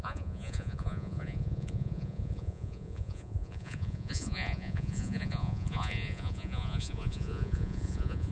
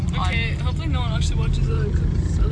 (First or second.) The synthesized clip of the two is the first